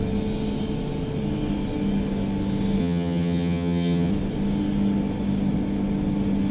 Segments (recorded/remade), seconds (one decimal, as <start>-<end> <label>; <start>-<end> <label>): 0.0-2.8 recorded; 2.8-4.1 remade; 4.1-6.5 recorded